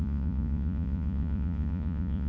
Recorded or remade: remade